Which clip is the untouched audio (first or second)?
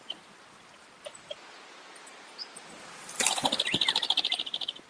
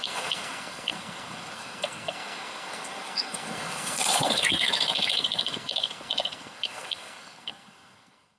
first